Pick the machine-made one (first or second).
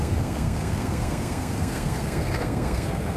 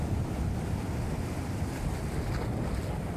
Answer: first